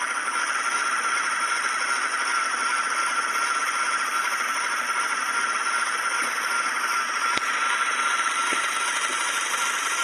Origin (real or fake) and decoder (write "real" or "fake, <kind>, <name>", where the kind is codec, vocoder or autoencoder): real